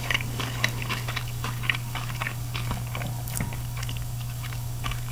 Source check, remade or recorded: remade